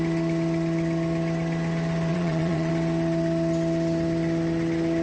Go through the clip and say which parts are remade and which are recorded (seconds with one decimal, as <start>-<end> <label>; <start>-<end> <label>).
0.0-2.1 recorded; 2.1-2.7 remade; 2.7-5.0 recorded